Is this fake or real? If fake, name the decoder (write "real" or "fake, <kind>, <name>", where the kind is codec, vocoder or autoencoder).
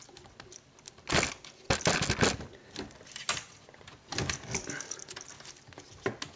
real